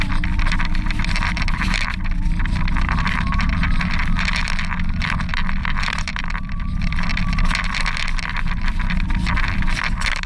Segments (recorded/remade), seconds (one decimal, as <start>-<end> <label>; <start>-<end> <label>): 0.0-5.6 recorded; 5.6-6.2 remade; 6.2-10.3 recorded